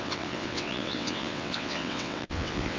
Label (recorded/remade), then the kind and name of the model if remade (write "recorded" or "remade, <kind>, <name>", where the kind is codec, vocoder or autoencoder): remade, vocoder, WaveNeXt